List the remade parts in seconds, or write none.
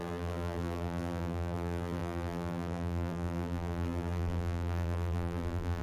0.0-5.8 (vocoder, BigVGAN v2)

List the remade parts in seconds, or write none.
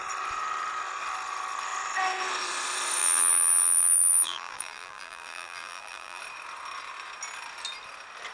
3.0-6.2 (vocoder, BigVGAN v2)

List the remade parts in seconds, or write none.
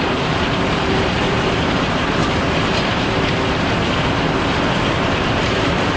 0.0-2.2 (vocoder, BigVGAN v2); 5.2-6.0